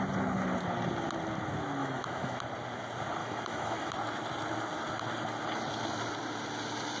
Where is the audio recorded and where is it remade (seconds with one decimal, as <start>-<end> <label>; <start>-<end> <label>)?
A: 0.0-1.8 recorded; 1.8-2.4 remade; 2.4-3.2 recorded; 3.2-3.9 remade; 3.9-7.0 recorded